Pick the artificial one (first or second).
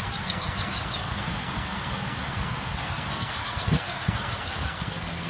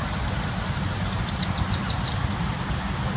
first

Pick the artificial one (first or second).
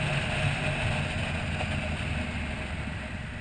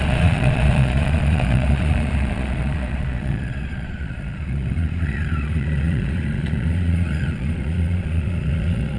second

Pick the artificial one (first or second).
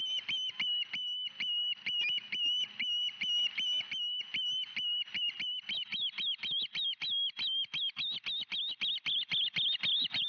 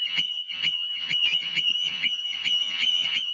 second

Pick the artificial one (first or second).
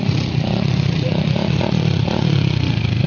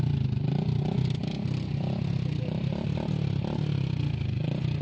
first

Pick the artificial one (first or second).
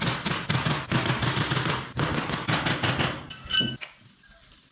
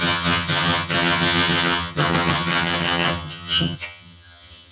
second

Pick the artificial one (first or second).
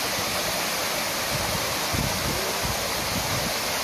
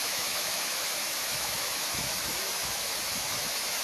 second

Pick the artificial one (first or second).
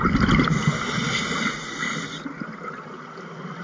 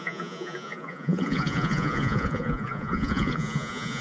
second